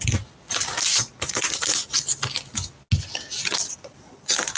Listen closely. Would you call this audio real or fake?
real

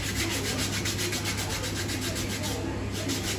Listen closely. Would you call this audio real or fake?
real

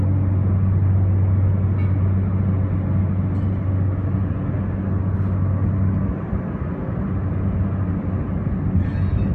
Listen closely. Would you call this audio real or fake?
real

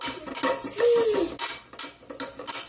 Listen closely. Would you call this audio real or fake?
real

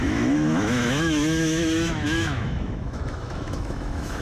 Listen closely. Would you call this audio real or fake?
fake